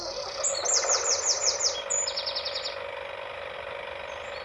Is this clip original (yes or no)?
yes